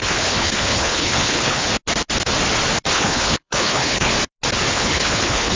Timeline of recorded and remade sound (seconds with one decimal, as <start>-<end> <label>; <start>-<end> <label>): 0.0-1.7 remade; 1.7-2.9 recorded; 2.9-4.1 remade; 4.1-4.7 recorded; 4.7-5.6 remade